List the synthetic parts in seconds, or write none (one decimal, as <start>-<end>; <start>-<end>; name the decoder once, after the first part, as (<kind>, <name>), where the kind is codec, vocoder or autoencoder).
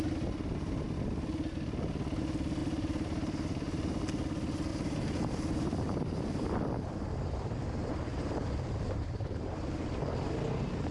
2.6-4.0 (vocoder, BigVGAN v2); 4.7-6.5; 8.1-10.1